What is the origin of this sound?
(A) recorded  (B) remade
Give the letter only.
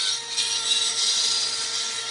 A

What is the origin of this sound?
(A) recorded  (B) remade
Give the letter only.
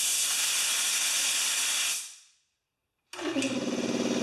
A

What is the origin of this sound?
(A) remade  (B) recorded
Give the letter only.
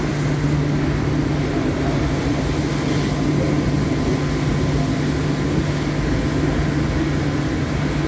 B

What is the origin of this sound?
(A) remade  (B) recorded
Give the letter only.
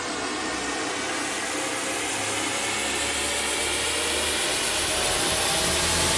B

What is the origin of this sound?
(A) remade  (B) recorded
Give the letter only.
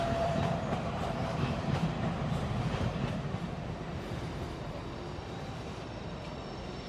A